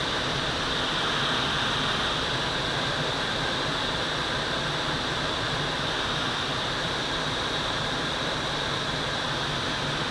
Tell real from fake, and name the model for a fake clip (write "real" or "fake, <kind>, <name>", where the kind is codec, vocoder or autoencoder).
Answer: fake, vocoder, BigVGAN v2